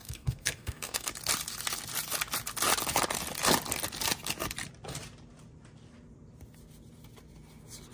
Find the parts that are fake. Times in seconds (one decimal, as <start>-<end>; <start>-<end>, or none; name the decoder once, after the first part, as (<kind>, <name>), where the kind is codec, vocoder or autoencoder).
0.0-1.1 (codec, SNAC)